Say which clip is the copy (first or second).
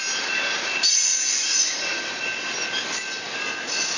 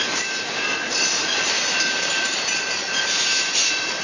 second